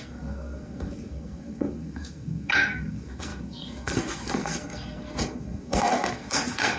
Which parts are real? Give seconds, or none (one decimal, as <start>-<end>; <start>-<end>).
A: none